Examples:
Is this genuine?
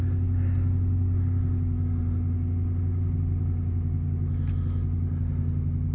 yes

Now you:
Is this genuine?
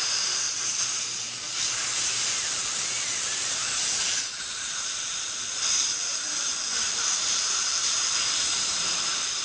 no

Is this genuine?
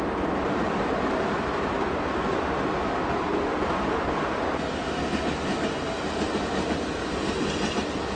yes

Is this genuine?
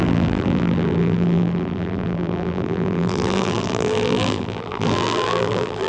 no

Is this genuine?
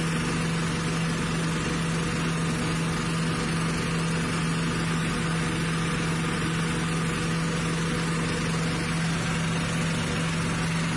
yes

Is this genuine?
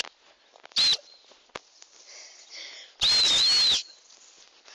yes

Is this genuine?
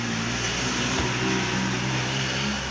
yes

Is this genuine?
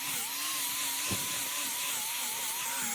no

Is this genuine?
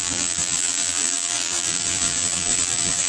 no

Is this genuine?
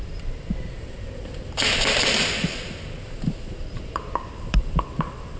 no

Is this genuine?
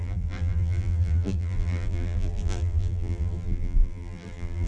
no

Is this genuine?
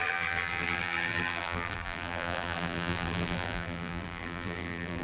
no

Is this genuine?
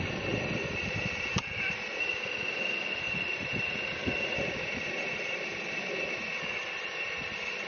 no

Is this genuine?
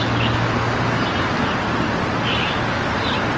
yes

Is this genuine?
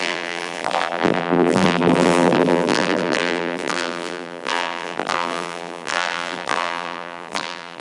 no